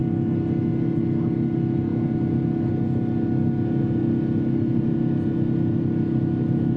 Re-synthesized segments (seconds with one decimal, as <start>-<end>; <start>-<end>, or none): none